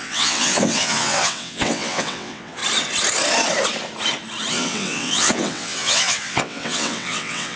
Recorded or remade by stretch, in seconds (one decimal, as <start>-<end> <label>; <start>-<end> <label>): 0.0-2.6 remade; 2.6-4.5 recorded; 4.5-7.6 remade